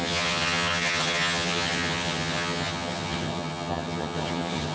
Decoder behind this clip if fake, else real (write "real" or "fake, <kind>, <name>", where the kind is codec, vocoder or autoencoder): fake, vocoder, HiFi-GAN